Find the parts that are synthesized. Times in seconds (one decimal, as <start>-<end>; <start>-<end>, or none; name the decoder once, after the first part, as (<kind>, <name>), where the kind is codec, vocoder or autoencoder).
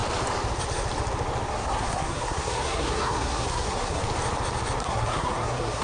1.5-4.0 (codec, SNAC); 4.8-5.8